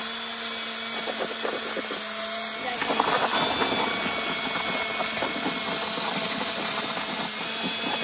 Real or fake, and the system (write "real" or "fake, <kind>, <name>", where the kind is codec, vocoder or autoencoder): real